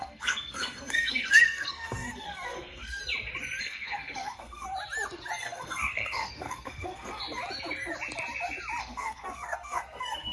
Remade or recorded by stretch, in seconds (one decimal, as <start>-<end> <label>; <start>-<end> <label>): 0.0-3.0 remade; 3.0-3.6 recorded; 3.6-4.7 remade; 4.7-5.4 recorded; 5.4-7.2 remade; 7.2-8.8 recorded; 8.8-10.3 remade

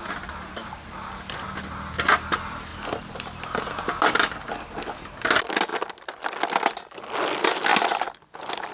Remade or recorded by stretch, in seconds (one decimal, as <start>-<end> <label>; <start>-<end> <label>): 0.0-7.7 recorded; 7.7-8.7 remade